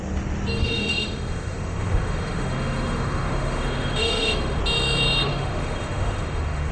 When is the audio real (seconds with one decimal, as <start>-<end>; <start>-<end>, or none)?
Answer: 0.0-0.6; 4.6-5.3